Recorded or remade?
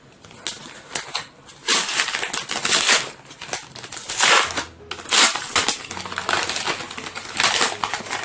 recorded